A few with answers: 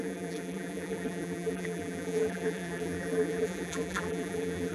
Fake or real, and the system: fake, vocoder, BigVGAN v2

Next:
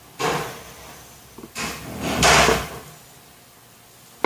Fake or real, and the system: real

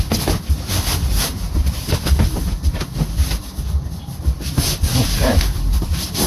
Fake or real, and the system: fake, vocoder, BigVGAN v2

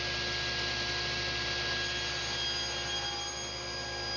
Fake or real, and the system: real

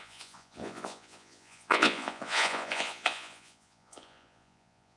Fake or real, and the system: fake, vocoder, Vocos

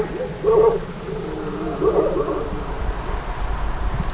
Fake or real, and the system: real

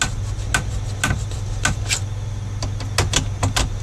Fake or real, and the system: real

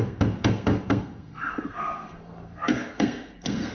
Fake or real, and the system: fake, codec, SNAC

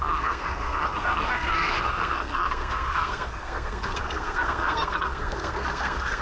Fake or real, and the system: fake, codec, SNAC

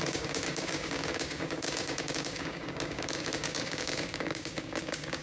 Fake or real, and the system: fake, codec, DAC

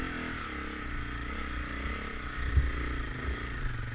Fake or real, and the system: real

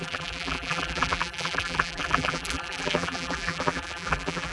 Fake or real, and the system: fake, vocoder, BigVGAN v2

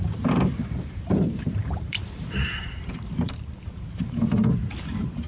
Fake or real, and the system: fake, vocoder, BigVGAN v2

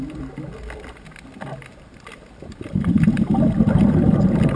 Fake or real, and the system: real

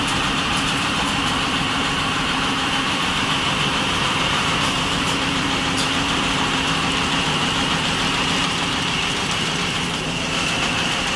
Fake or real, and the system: fake, vocoder, BigVGAN v2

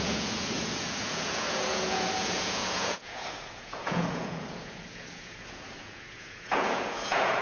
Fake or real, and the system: fake, vocoder, Vocos